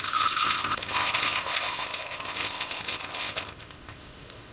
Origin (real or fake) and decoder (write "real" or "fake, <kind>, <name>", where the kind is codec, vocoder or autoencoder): fake, codec, ZipCodec